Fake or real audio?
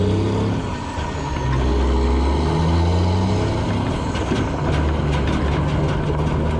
real